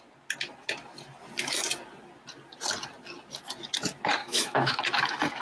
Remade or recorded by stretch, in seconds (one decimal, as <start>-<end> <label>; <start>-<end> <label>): 0.0-4.2 recorded; 4.2-4.8 remade; 4.8-5.4 recorded